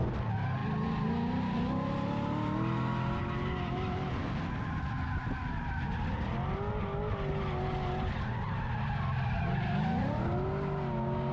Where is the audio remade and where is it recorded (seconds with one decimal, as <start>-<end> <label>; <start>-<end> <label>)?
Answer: 0.0-11.3 recorded